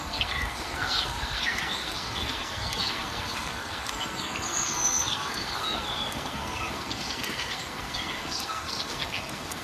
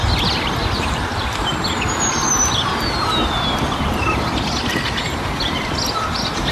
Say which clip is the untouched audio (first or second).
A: second